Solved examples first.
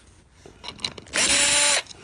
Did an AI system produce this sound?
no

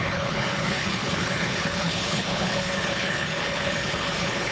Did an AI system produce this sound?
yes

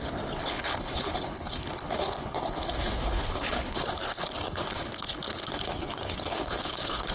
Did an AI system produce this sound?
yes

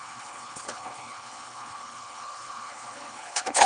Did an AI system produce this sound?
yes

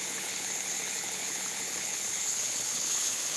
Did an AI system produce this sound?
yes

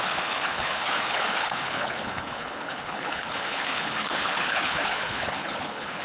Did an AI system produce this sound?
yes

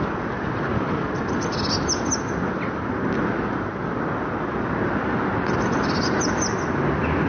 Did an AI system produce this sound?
no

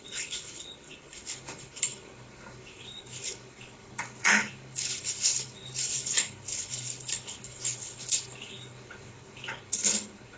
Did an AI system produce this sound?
yes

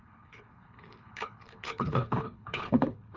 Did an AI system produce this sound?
yes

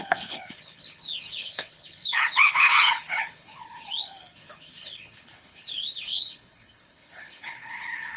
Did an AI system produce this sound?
yes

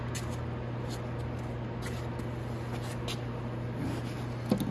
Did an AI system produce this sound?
no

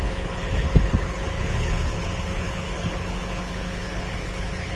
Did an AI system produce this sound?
yes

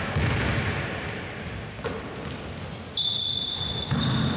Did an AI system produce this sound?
no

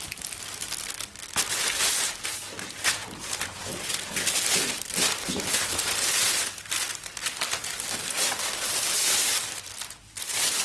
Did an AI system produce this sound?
no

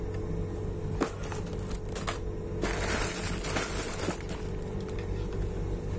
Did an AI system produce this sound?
no